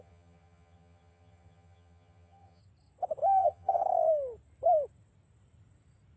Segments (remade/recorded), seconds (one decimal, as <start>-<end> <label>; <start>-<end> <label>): 0.0-2.6 remade; 2.6-3.4 recorded; 3.4-3.8 remade; 3.8-6.2 recorded